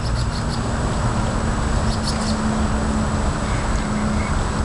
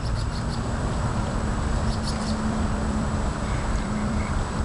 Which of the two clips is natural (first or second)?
first